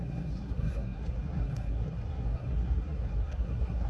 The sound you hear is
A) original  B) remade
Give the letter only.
B